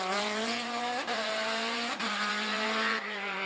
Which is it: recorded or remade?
remade